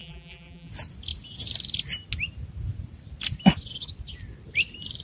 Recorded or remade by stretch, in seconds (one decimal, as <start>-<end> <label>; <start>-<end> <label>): 0.0-0.7 remade; 0.7-5.0 recorded